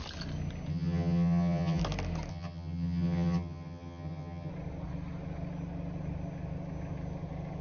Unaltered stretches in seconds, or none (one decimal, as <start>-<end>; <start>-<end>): 0.0-0.7; 1.8-2.3; 4.5-7.6